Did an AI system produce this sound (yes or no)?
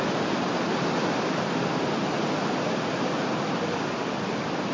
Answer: no